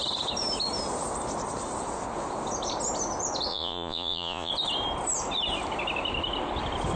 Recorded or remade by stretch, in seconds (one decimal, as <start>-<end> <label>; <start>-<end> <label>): 0.0-3.5 recorded; 3.5-4.5 remade; 4.5-7.0 recorded